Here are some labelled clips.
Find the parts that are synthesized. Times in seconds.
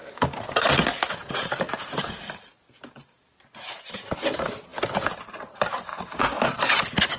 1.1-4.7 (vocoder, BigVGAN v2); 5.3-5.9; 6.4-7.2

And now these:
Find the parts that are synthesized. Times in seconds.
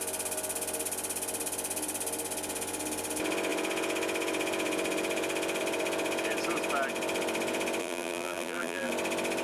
7.8-8.9 (vocoder, BigVGAN v2)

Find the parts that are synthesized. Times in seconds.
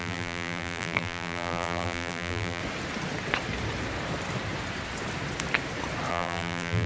0.0-2.6 (vocoder, BigVGAN v2); 6.1-6.9